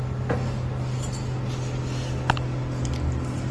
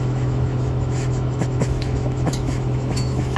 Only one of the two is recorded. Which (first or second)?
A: first